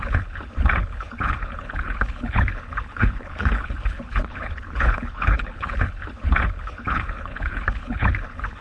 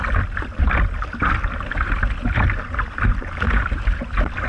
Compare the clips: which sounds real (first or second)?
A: second